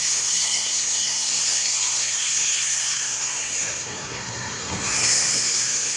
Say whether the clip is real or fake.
fake